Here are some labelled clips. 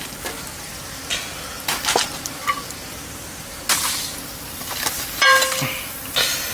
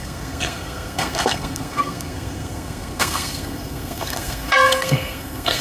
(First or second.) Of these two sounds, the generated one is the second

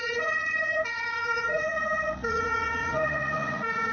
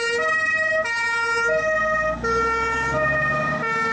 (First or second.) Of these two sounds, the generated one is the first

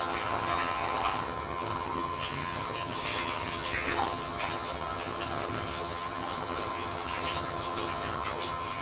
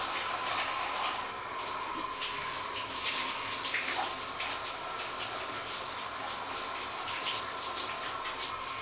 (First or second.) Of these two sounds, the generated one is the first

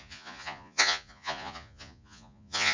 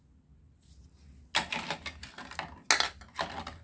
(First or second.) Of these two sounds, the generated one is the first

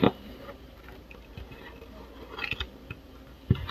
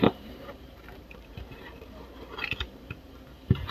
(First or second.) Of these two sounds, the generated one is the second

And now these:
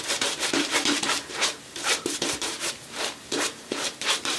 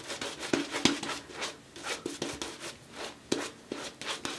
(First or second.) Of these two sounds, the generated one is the first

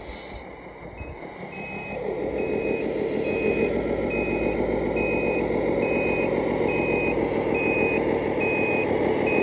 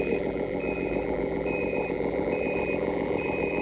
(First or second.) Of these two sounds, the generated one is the second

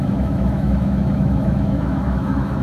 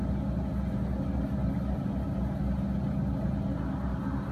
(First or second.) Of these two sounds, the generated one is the first